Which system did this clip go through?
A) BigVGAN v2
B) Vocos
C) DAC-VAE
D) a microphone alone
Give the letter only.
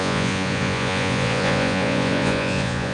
B